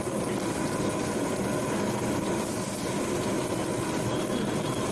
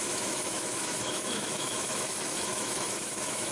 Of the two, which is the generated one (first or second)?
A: second